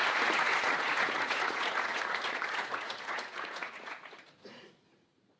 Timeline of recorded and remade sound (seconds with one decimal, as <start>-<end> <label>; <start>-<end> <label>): 0.0-5.4 remade